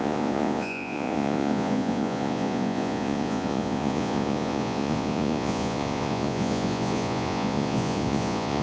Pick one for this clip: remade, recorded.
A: remade